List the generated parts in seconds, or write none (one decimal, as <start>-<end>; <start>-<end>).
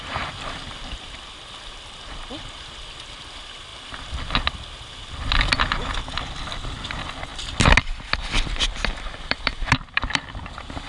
0.0-5.5; 6.4-7.3; 9.0-10.9